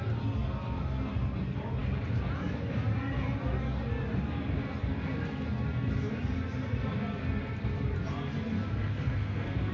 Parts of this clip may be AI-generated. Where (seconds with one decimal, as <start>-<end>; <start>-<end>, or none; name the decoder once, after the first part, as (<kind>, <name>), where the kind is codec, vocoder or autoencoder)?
8.7-9.7 (codec, SNAC)